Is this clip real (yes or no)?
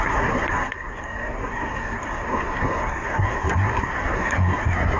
no